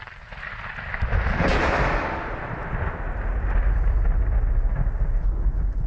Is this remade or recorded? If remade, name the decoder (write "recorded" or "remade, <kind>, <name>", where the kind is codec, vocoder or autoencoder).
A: recorded